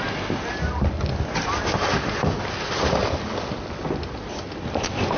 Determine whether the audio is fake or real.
real